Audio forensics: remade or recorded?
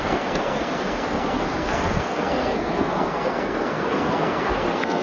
remade